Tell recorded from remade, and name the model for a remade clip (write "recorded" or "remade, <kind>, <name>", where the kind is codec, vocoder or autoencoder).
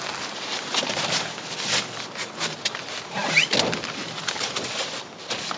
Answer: recorded